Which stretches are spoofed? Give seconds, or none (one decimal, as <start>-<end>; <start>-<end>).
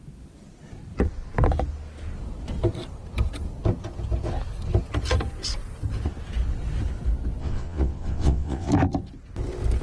7.4-8.7